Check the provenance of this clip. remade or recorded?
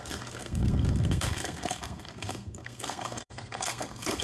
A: remade